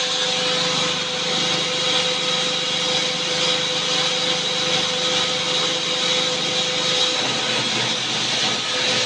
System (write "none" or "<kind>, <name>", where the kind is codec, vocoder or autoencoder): none